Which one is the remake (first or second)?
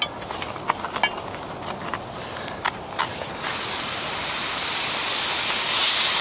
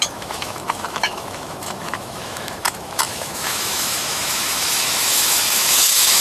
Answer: second